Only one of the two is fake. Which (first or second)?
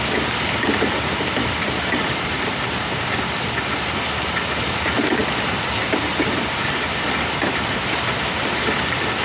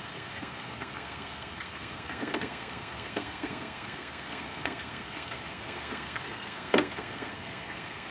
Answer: second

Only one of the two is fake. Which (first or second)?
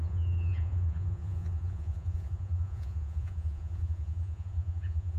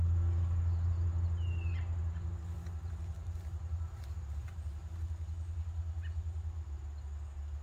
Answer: first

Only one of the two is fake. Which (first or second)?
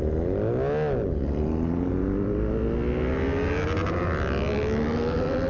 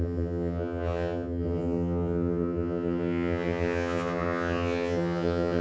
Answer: second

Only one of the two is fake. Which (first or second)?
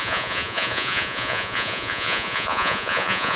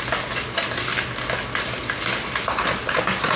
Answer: first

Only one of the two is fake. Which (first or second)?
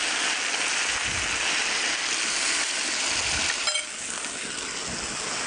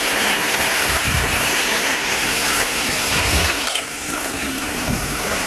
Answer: second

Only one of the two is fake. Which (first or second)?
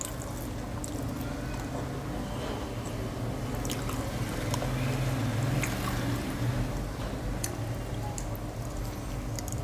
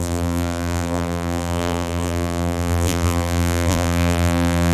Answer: second